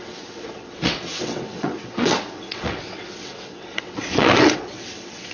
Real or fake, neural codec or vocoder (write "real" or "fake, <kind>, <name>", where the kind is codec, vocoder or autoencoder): fake, vocoder, WaveNeXt